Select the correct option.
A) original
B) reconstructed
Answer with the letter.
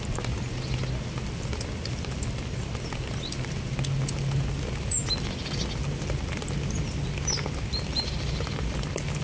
A